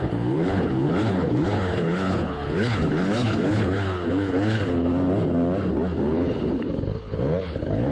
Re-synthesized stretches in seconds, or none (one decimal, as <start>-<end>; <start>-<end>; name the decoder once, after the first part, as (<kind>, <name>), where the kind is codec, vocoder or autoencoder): 0.0-4.9 (codec, HILCodec); 6.0-7.9